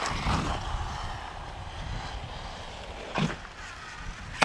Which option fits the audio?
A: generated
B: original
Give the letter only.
B